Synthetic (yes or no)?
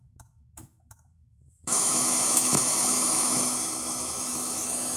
yes